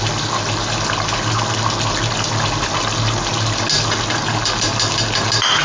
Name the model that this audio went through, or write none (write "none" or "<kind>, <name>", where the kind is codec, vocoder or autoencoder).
none